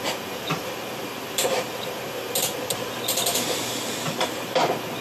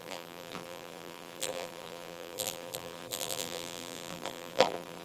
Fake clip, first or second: second